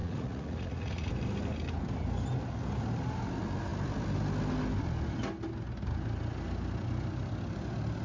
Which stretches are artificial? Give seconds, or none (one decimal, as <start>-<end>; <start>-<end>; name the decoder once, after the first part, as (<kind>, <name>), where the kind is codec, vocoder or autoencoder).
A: 0.0-1.1 (vocoder, Vocos)